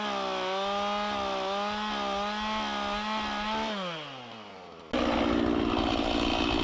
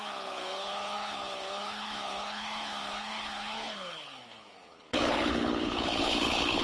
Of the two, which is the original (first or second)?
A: first